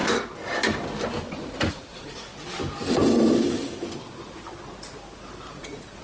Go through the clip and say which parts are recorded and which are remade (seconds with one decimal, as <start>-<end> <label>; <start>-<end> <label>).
0.0-1.7 recorded; 1.7-2.3 remade; 2.3-5.5 recorded; 5.5-6.0 remade